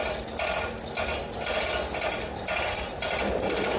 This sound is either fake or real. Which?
real